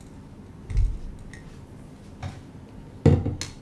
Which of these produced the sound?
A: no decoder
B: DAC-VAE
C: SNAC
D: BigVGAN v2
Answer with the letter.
A